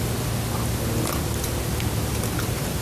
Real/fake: real